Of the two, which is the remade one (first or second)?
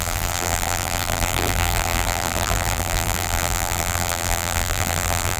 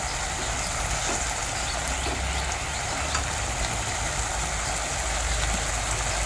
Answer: first